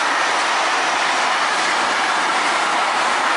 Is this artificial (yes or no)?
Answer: no